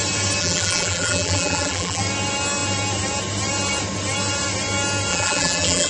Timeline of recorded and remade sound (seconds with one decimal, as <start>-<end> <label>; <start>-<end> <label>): 0.0-0.4 recorded; 0.4-2.0 remade; 2.0-5.1 recorded; 5.1-5.9 remade